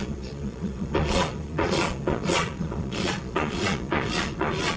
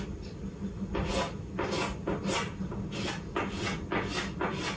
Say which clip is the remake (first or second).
first